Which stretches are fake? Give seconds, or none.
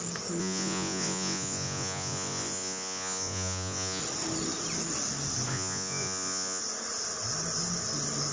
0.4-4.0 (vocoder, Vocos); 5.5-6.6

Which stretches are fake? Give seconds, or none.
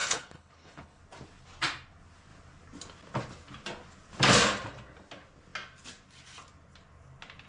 0.0-1.0 (codec, HILCodec)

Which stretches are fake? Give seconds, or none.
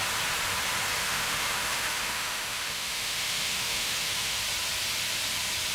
1.0-4.4 (autoencoder, DAC-VAE)